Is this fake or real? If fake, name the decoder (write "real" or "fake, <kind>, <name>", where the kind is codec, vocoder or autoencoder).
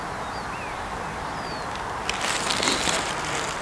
real